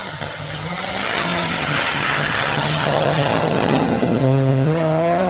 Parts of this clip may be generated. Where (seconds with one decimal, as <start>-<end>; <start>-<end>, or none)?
0.0-5.3